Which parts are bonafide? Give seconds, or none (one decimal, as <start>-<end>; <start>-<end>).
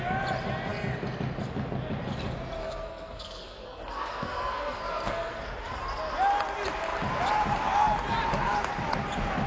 0.0-2.6; 5.4-9.5